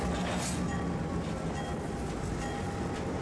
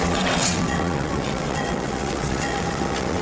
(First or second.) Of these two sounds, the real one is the first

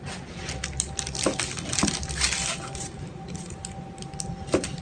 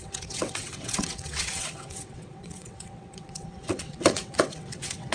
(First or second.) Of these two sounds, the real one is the first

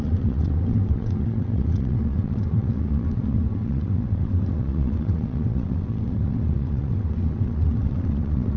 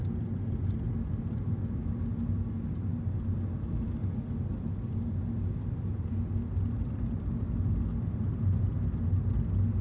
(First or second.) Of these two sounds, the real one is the second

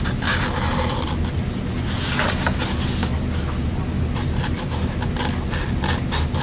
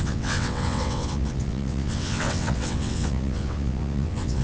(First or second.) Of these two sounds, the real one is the first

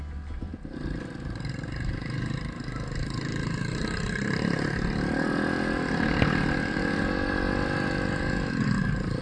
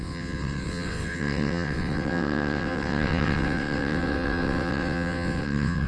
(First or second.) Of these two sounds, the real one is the first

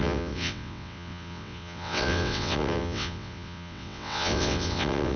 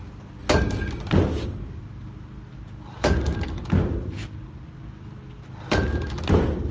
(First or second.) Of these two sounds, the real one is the second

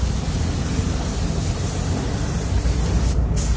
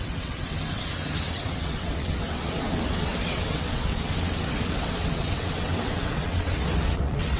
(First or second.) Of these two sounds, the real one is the first